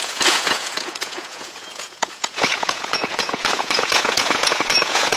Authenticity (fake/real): fake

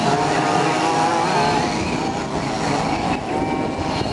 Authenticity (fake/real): real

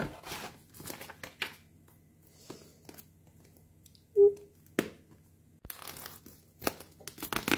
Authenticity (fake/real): real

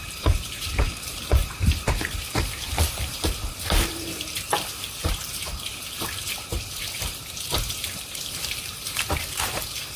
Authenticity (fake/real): fake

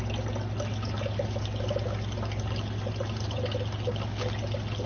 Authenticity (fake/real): real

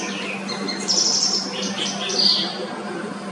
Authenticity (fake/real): real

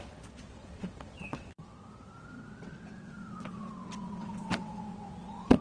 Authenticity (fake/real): fake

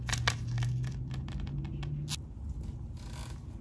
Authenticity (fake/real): real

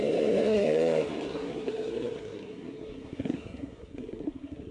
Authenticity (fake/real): fake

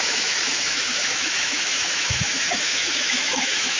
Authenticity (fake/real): fake